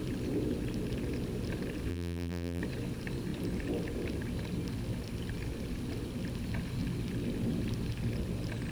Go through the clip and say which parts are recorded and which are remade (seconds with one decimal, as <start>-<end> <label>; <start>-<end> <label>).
0.0-1.9 recorded; 1.9-2.6 remade; 2.6-8.7 recorded